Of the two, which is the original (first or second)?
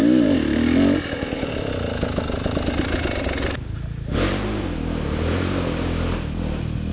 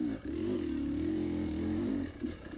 first